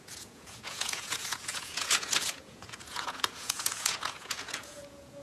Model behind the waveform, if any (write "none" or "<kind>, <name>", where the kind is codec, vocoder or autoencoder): vocoder, Vocos